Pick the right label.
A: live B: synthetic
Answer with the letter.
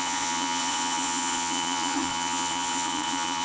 B